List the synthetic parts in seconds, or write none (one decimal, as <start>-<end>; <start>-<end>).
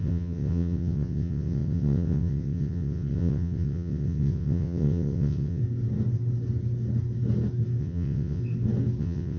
0.0-5.6; 7.8-8.4; 9.0-9.4